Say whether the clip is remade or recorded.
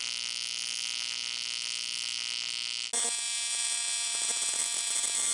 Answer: recorded